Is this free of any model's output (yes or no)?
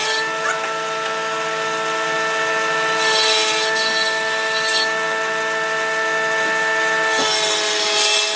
yes